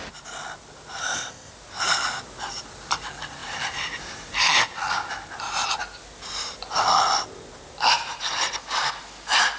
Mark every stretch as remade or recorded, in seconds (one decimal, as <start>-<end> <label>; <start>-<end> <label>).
0.0-1.0 recorded; 1.0-1.5 remade; 1.5-9.6 recorded